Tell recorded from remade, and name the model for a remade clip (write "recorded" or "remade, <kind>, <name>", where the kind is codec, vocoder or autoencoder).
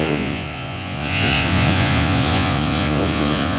remade, vocoder, Vocos